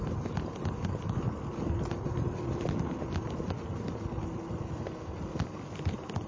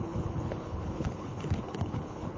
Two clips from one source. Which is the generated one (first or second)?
second